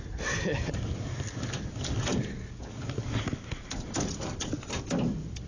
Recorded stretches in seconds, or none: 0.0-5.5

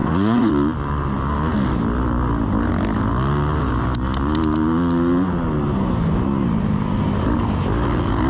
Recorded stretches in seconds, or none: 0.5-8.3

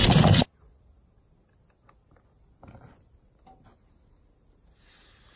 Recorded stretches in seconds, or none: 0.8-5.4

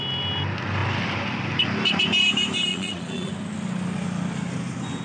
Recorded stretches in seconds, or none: 0.0-2.7; 3.3-5.0

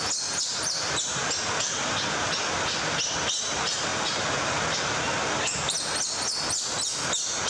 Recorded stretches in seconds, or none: 0.0-7.5

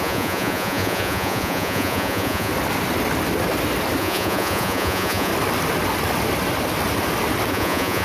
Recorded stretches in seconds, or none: 2.5-4.0; 5.3-7.5